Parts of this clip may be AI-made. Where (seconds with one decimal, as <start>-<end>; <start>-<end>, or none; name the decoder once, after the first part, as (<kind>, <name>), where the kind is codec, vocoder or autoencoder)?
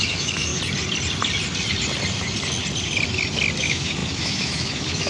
0.0-0.5 (autoencoder, DAC-VAE); 3.6-5.1